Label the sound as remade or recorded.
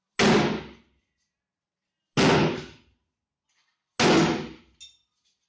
recorded